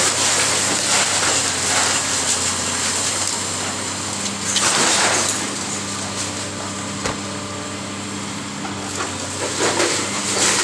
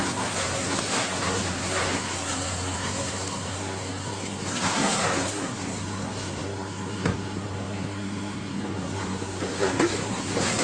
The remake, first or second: second